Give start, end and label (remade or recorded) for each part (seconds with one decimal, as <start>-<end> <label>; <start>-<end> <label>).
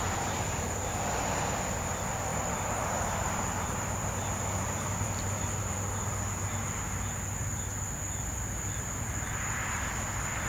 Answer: 0.0-2.3 recorded; 2.3-3.4 remade; 3.4-4.2 recorded; 4.2-5.4 remade; 5.4-10.5 recorded